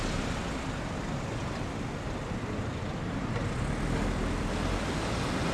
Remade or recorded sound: recorded